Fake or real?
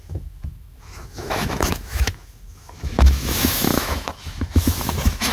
fake